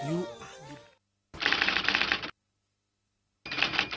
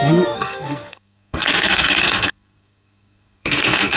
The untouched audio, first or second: first